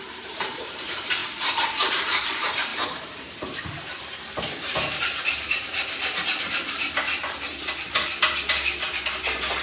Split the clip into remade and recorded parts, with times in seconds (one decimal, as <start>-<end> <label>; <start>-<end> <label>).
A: 0.0-7.5 remade; 7.5-9.6 recorded

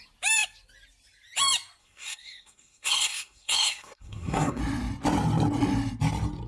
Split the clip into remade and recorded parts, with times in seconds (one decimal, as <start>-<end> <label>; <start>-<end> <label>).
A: 0.0-1.8 recorded; 1.8-4.6 remade; 4.6-6.5 recorded

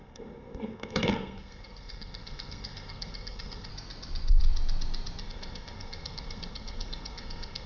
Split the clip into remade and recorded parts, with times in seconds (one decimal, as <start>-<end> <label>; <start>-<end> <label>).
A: 0.0-3.7 remade; 3.7-5.2 recorded; 5.2-7.7 remade

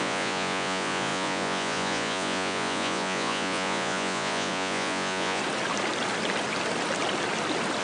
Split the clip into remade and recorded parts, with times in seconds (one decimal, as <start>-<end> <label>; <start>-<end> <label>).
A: 0.0-5.4 remade; 5.4-7.8 recorded

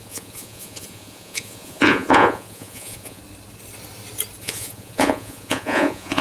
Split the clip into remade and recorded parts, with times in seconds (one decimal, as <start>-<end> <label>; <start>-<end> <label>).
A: 0.0-3.2 remade; 3.2-4.4 recorded; 4.4-6.2 remade

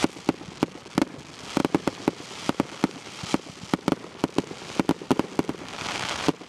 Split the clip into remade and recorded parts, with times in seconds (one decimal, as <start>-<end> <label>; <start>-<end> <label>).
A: 0.0-6.5 recorded

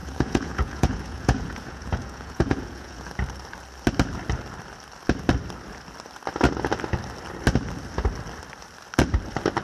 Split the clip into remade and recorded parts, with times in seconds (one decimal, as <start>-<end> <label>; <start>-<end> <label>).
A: 0.0-3.1 remade; 3.1-9.6 recorded

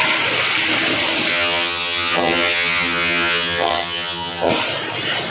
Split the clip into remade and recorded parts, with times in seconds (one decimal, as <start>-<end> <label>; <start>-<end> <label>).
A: 0.0-1.3 recorded; 1.3-4.5 remade; 4.5-5.3 recorded